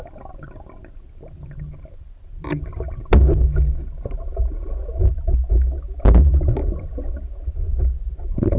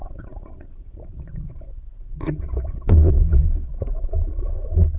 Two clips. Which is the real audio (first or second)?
first